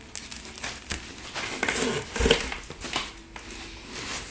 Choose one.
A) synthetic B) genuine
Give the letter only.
B